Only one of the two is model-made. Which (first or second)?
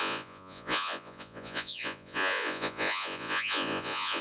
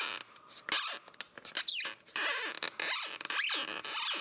first